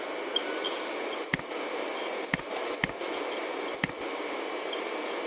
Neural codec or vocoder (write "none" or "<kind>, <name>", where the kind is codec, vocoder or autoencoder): none